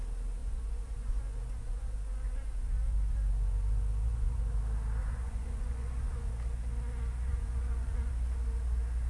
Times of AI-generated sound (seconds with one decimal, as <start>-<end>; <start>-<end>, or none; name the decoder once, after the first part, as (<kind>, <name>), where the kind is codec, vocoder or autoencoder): 0.4-4.6 (vocoder, Vocos); 5.0-6.3; 7.3-8.1